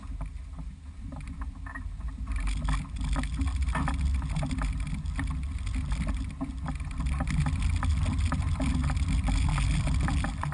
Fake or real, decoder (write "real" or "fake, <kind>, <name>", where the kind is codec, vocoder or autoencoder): real